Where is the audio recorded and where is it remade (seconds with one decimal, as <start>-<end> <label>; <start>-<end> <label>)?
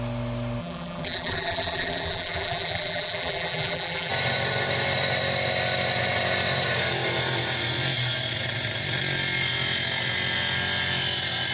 0.0-0.6 recorded; 0.6-4.1 remade; 4.1-11.5 recorded